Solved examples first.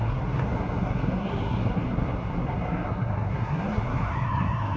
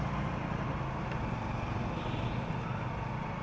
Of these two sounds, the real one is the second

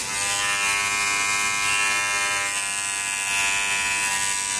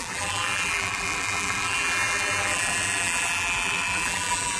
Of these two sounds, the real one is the first